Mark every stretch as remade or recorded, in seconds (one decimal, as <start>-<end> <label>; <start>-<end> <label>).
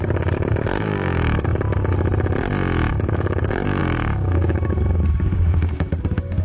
0.0-1.5 remade; 1.5-2.9 recorded; 2.9-6.4 remade